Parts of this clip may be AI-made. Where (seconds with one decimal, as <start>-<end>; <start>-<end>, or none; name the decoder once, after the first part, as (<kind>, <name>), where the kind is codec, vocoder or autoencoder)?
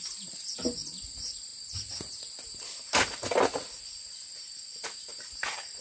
0.0-1.5 (vocoder, BigVGAN v2); 5.0-5.8